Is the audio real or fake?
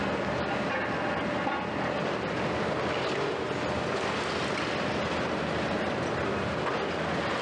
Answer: real